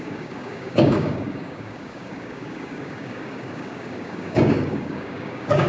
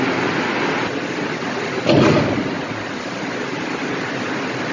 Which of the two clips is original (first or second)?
second